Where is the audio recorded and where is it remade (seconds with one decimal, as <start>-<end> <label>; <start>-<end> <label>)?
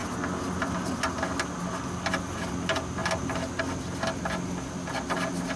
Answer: 0.0-5.6 recorded